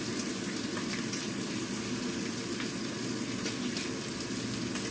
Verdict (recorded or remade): recorded